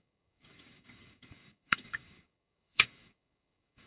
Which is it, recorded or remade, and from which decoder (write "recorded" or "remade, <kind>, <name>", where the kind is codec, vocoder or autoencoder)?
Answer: remade, codec, DAC